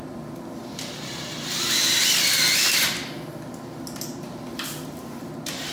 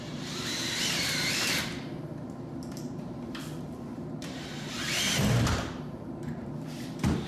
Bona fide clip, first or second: first